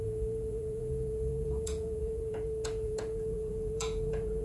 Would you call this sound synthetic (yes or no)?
yes